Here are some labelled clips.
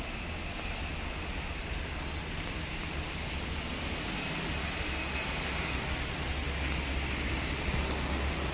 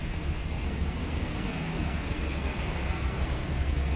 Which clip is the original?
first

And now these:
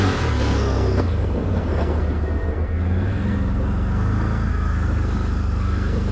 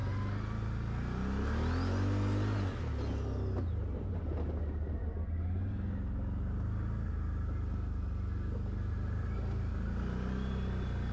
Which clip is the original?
second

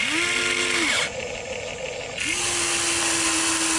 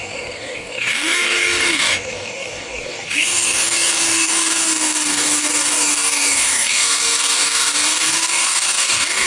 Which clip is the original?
first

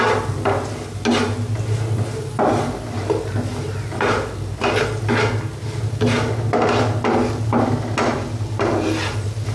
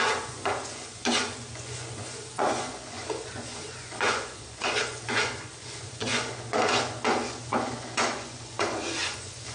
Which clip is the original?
first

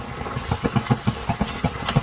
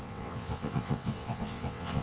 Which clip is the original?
first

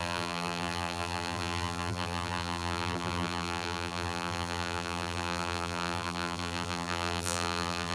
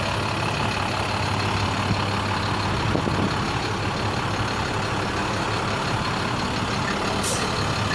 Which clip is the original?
second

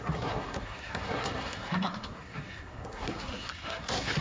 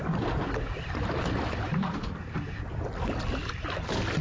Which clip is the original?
second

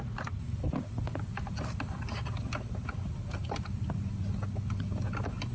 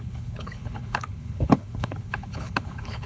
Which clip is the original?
first